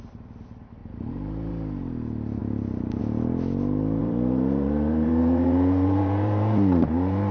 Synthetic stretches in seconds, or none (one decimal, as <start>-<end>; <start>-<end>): 0.8-1.5; 4.0-7.3